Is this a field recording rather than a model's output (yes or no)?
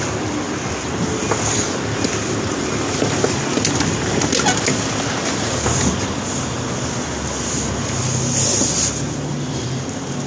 yes